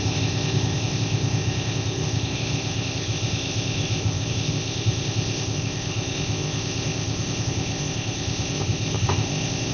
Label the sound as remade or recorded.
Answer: remade